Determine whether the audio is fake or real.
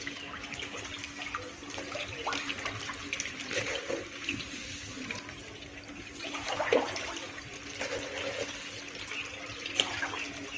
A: real